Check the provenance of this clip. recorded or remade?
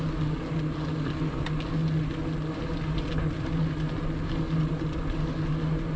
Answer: recorded